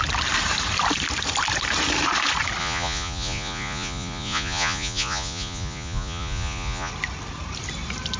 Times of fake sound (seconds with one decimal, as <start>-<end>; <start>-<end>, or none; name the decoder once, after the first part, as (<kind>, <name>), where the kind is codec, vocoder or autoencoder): 2.6-6.9 (vocoder, Vocos)